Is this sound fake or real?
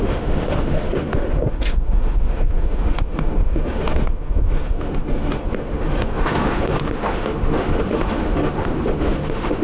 fake